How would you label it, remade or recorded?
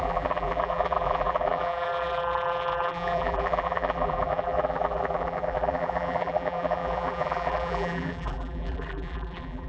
remade